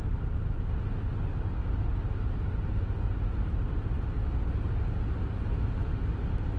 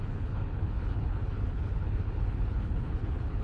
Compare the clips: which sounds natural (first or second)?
first